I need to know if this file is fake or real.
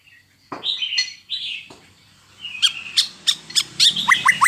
fake